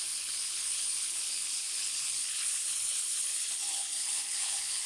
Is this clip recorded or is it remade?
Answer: remade